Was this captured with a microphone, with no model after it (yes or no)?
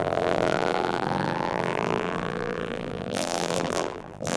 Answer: no